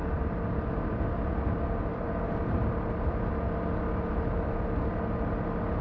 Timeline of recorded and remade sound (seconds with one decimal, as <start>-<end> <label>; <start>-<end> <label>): 0.0-3.2 remade; 3.2-5.8 recorded